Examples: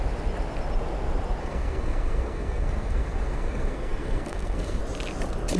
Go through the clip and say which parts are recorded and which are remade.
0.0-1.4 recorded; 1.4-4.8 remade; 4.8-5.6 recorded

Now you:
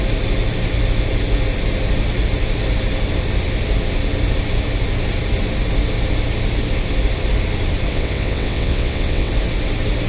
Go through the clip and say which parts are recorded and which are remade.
0.0-7.9 recorded; 7.9-9.3 remade; 9.3-10.1 recorded

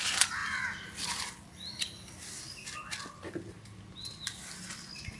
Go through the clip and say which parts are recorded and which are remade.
0.0-5.2 recorded

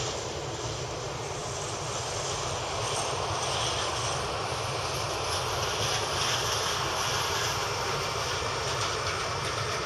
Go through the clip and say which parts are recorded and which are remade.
0.0-9.9 recorded

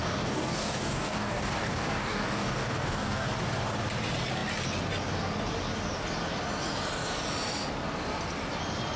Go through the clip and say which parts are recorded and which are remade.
0.0-3.3 remade; 3.3-9.0 recorded